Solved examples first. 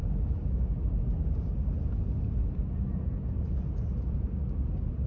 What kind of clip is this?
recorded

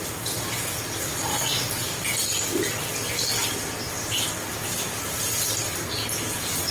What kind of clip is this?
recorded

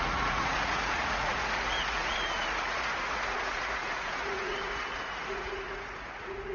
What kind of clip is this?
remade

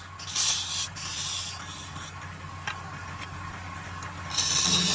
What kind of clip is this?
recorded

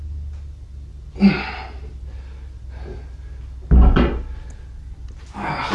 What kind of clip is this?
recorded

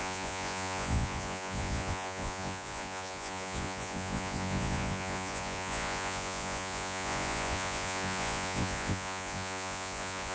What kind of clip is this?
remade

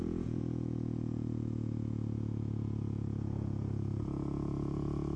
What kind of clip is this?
remade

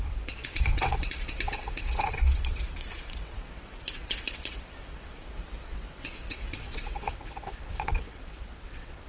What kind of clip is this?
remade